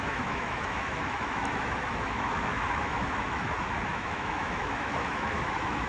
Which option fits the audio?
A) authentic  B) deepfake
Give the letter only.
B